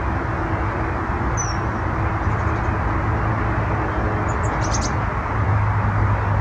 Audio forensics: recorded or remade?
recorded